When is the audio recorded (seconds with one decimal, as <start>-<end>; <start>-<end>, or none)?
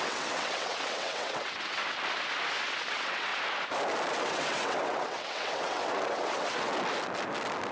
1.8-2.9; 3.3-4.2; 6.7-7.7